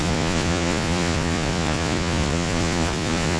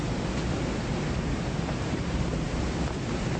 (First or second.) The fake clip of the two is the first